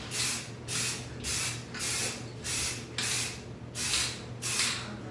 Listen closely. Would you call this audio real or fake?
real